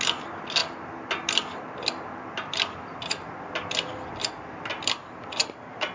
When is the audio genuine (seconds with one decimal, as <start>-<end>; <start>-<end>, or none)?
0.0-5.9